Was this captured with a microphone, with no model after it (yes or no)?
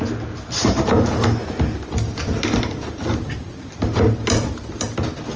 yes